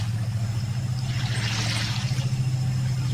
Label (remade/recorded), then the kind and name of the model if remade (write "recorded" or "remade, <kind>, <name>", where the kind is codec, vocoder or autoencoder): recorded